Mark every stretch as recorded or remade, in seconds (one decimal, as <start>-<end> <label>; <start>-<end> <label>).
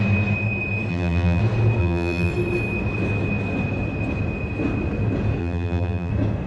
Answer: 0.0-0.9 recorded; 0.9-1.4 remade; 1.4-1.8 recorded; 1.8-2.3 remade; 2.3-5.4 recorded; 5.4-6.1 remade; 6.1-6.5 recorded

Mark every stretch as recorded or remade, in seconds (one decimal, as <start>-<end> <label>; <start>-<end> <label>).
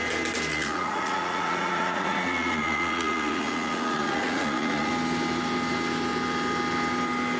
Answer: 0.0-0.5 recorded; 0.5-4.9 remade; 4.9-7.4 recorded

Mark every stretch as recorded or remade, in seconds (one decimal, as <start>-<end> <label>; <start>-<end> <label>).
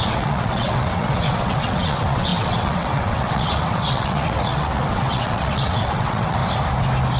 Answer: 0.0-6.4 remade; 6.4-7.2 recorded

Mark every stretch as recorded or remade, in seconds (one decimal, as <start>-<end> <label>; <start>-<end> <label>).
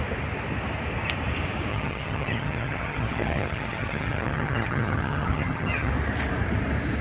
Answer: 0.0-1.7 recorded; 1.7-5.9 remade; 5.9-7.0 recorded